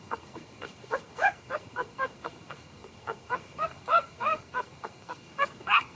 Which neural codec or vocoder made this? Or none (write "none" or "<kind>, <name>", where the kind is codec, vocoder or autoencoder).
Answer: codec, SNAC